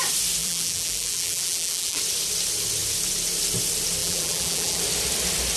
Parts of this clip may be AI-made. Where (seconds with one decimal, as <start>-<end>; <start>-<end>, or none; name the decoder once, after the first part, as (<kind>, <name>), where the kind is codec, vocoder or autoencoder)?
0.4-2.0 (vocoder, BigVGAN v2); 4.0-4.8